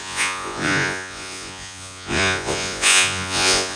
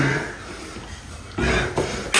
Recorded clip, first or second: second